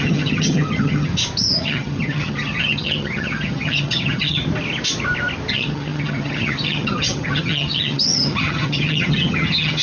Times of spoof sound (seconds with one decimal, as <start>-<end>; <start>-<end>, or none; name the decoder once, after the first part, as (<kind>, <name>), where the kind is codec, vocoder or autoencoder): 0.0-1.1 (vocoder, HiFi-GAN); 1.6-4.4; 5.5-9.8